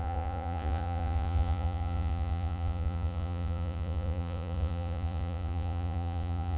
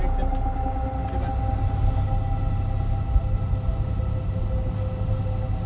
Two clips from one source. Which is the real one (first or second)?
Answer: second